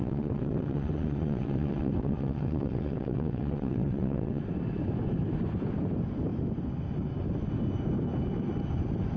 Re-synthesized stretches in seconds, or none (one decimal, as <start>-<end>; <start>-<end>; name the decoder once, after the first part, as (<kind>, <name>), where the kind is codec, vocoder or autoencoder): 0.0-4.4 (vocoder, WaveNeXt)